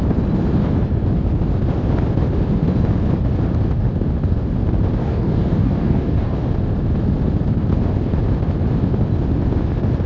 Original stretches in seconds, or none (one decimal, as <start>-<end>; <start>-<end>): 0.0-5.0; 6.4-10.1